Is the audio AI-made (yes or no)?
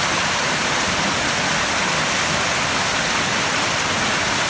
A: no